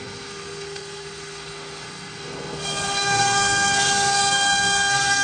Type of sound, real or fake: fake